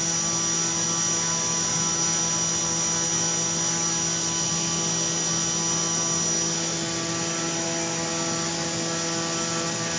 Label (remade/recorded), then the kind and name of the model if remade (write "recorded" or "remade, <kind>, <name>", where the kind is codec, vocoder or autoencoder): recorded